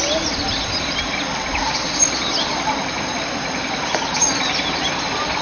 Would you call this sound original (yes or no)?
yes